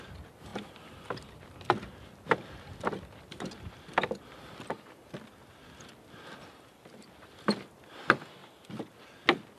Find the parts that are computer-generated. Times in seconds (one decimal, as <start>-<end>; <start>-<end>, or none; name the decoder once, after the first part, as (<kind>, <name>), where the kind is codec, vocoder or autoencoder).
none